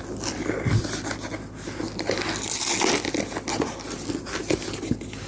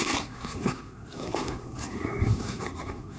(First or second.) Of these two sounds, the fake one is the second